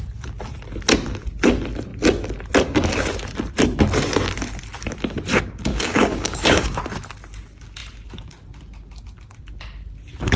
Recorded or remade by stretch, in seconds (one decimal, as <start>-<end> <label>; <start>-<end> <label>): 0.0-5.7 recorded; 5.7-6.8 remade; 6.8-10.4 recorded

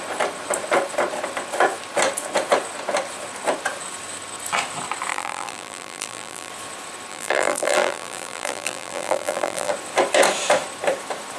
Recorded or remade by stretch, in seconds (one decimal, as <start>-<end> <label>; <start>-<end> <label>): 0.0-5.1 recorded; 5.1-6.5 remade; 6.5-7.1 recorded; 7.1-9.7 remade; 9.7-11.4 recorded

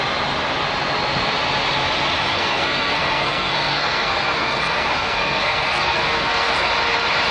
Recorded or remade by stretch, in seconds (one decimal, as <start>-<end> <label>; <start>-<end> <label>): 0.0-2.3 recorded; 2.3-6.7 remade; 6.7-7.3 recorded

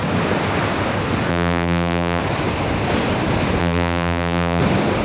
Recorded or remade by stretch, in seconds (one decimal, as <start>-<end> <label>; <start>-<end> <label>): 0.0-1.3 recorded; 1.3-2.2 remade; 2.2-3.6 recorded; 3.6-4.6 remade; 4.6-5.0 recorded